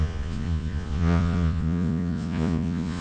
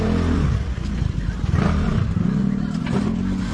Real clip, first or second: second